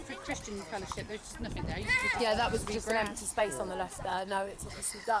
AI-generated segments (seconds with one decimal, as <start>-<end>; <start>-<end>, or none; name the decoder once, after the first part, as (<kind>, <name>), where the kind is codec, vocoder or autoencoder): 4.1-5.2 (codec, HILCodec)